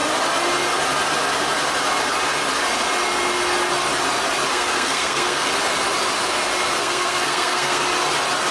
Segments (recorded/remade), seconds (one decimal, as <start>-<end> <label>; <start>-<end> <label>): 0.0-4.5 recorded; 4.5-5.5 remade; 5.5-6.8 recorded; 6.8-7.8 remade; 7.8-8.5 recorded